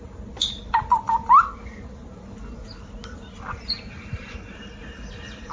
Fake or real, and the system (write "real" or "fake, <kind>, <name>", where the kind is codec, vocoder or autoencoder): real